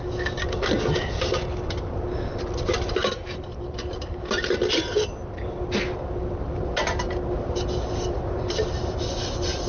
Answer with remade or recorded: recorded